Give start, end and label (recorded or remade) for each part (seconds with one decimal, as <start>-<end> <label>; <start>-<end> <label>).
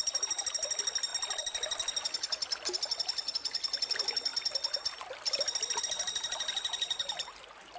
0.0-7.8 recorded